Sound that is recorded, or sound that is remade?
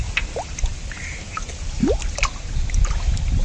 recorded